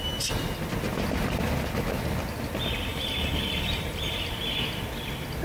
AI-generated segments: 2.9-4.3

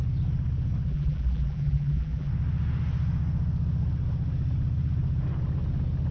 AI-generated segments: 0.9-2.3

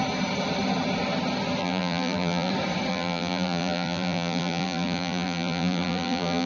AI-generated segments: 1.6-2.5; 2.9-6.5